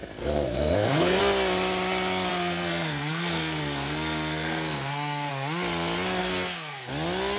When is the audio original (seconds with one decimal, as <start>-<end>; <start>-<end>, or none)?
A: 1.2-2.3; 5.3-6.2; 6.9-7.4